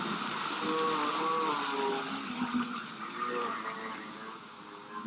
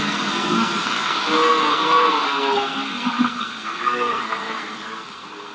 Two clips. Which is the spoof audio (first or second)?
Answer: second